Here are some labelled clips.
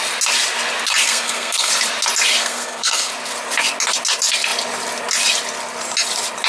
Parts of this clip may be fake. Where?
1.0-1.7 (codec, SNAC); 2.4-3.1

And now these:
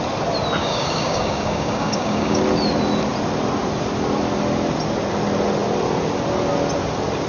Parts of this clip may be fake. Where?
0.6-2.4 (codec, DAC)

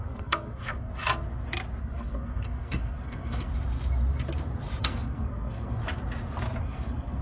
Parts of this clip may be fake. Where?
0.0-0.9 (codec, SNAC); 1.8-3.5; 4.8-5.8; 6.6-7.2